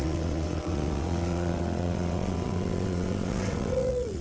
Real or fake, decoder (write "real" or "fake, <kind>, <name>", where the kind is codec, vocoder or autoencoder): fake, vocoder, WaveNeXt